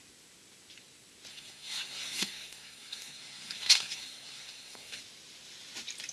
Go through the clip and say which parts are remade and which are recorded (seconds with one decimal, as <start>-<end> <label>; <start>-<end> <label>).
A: 0.0-1.3 recorded; 1.3-5.0 remade; 5.0-6.1 recorded